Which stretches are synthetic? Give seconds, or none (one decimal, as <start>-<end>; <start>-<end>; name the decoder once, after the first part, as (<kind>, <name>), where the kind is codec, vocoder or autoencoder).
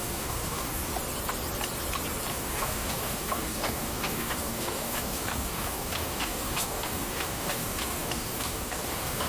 0.0-0.9 (codec, DAC); 2.3-9.3